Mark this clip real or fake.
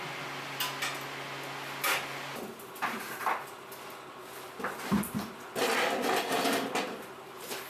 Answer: real